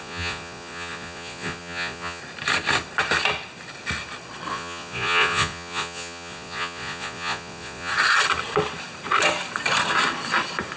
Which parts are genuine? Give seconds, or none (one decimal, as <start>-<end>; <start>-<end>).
2.2-4.5; 7.9-10.8